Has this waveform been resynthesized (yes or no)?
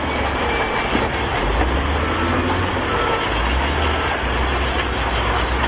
no